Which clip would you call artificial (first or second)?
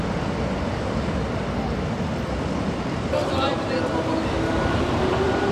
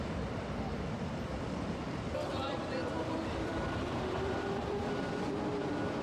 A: second